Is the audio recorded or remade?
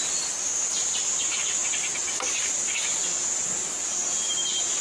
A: recorded